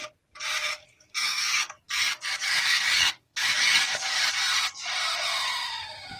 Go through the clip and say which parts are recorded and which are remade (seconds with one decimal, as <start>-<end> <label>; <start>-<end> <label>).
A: 0.0-0.6 recorded; 0.6-4.3 remade; 4.3-6.2 recorded